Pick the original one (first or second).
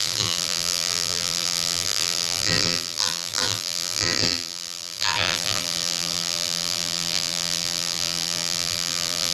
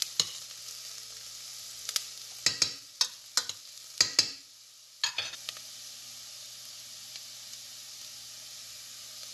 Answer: second